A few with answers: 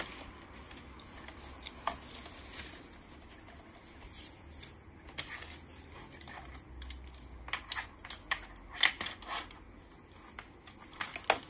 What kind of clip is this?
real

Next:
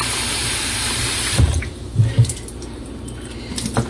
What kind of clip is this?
fake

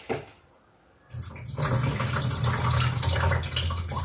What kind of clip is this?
real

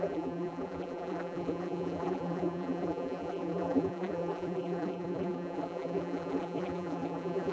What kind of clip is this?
fake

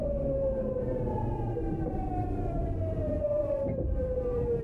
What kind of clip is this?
fake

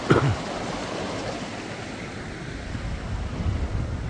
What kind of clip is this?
fake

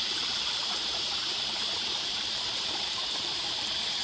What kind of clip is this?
fake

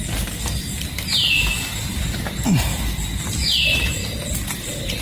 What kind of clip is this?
fake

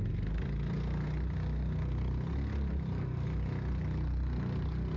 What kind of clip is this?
real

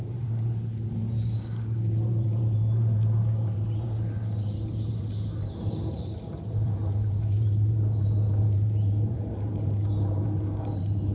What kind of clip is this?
fake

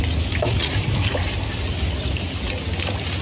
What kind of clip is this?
real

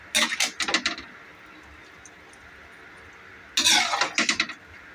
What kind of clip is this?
real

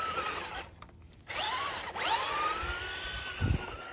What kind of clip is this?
real